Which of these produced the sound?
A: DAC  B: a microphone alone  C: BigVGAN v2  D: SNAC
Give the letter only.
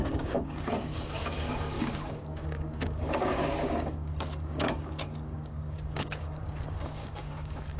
A